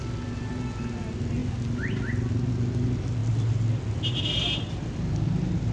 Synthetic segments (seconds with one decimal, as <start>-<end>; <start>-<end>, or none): none